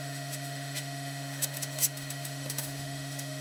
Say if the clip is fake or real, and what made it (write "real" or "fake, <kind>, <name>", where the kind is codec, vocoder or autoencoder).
fake, autoencoder, DAC-VAE